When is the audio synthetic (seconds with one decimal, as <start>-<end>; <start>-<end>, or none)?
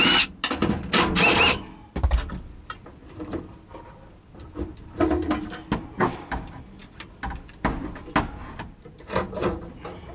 none